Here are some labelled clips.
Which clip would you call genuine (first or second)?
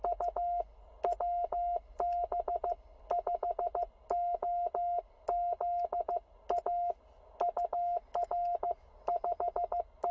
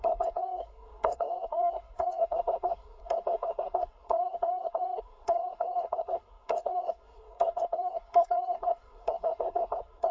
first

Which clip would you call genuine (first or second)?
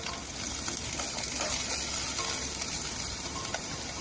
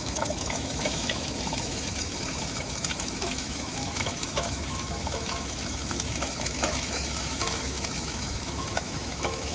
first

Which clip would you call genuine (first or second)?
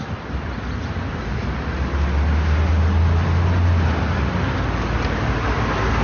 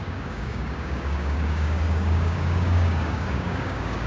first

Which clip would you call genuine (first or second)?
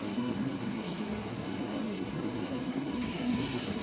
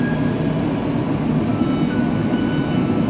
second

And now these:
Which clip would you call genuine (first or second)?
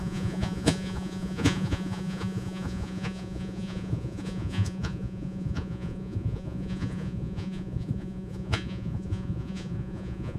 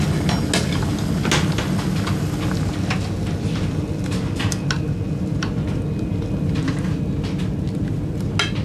second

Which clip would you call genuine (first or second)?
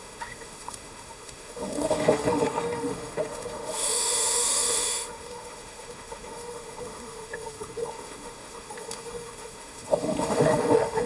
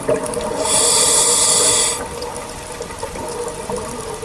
second